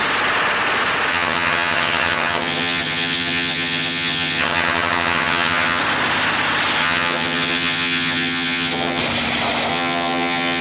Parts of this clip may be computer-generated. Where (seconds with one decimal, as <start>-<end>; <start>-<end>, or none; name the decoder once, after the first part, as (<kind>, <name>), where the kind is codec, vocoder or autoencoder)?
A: 1.1-5.8 (vocoder, HiFi-GAN); 6.8-9.0; 9.7-10.6